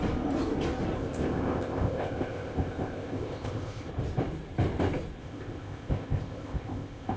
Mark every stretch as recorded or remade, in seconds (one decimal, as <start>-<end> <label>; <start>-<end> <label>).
0.0-1.0 recorded; 1.0-3.9 remade; 3.9-5.2 recorded; 5.2-7.2 remade